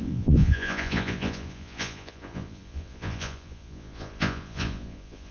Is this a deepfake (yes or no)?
yes